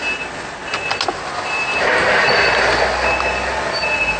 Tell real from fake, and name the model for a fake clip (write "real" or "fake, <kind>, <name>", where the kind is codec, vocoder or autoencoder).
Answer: real